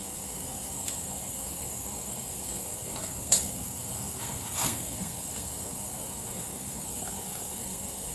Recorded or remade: remade